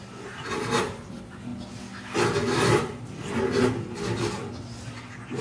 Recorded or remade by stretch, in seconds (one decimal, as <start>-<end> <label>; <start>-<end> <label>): 0.0-5.4 recorded